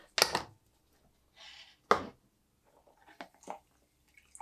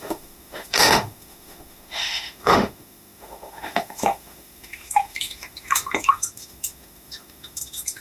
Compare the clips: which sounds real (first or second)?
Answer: first